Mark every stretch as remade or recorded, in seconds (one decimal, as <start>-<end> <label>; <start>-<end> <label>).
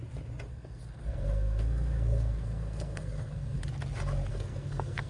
0.0-0.5 recorded; 0.5-3.6 remade; 3.6-4.3 recorded; 4.3-5.1 remade